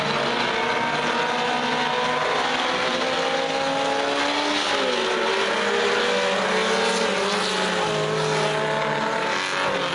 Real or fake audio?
real